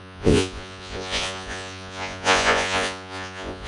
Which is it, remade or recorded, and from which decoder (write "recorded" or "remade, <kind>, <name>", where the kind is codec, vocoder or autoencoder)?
remade, vocoder, Vocos